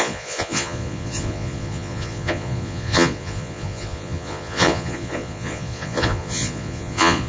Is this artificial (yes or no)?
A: yes